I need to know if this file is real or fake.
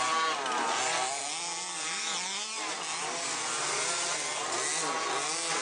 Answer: real